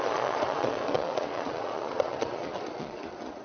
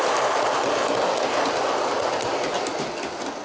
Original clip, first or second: second